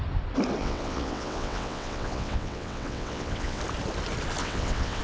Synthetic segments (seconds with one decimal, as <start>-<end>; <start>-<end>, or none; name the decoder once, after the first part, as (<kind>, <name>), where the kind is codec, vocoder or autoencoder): 0.6-3.6 (vocoder, WaveNeXt); 4.4-5.0